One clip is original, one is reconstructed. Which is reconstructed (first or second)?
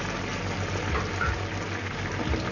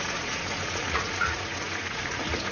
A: second